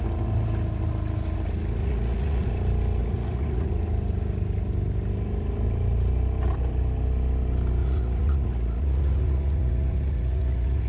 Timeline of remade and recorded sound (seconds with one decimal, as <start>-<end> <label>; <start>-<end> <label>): 0.0-1.8 recorded; 1.8-2.5 remade; 2.5-3.0 recorded; 3.0-3.7 remade; 3.7-7.8 recorded; 7.8-10.9 remade

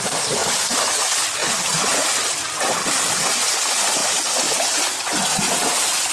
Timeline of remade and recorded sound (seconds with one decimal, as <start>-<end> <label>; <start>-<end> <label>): 0.0-6.1 recorded

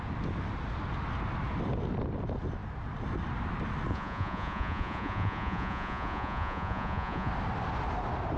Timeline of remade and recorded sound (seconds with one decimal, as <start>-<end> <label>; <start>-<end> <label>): 0.0-3.9 recorded; 3.9-7.3 remade; 7.3-8.4 recorded

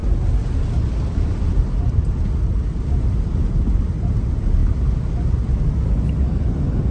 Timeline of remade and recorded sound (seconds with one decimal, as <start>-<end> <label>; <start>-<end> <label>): 0.0-6.9 recorded

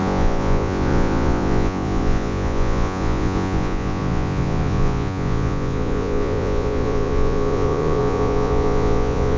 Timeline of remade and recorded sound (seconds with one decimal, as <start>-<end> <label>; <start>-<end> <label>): 0.0-9.4 remade

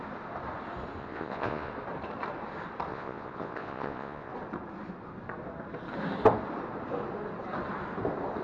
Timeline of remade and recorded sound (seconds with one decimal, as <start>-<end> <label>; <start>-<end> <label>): 0.0-1.0 recorded; 1.0-1.7 remade; 1.7-2.9 recorded; 2.9-4.3 remade; 4.3-8.4 recorded